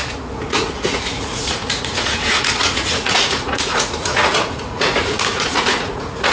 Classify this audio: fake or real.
fake